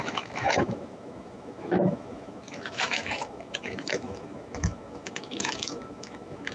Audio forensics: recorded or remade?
remade